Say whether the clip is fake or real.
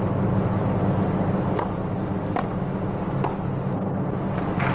real